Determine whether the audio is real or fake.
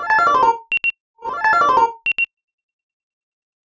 real